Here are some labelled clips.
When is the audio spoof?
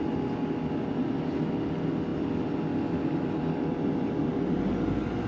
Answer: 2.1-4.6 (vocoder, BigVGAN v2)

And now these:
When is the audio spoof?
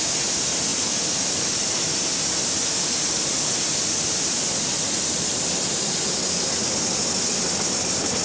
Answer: 0.7-5.6 (vocoder, BigVGAN v2)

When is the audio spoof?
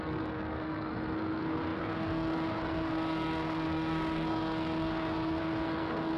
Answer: 0.0-6.2 (codec, SNAC)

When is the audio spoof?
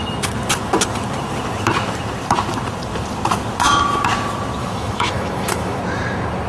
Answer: 4.6-5.8 (autoencoder, DAC-VAE)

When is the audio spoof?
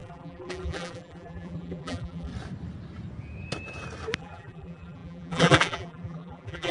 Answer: 0.0-2.3 (vocoder, BigVGAN v2); 4.2-6.7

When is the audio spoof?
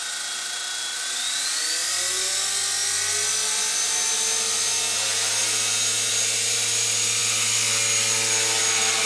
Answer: none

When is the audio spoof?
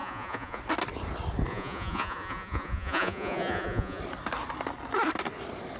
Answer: 0.0-0.6 (vocoder, Vocos); 1.5-4.0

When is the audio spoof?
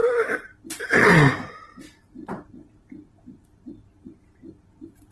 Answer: 0.0-5.1 (vocoder, BigVGAN v2)